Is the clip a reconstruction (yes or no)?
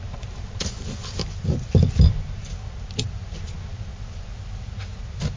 no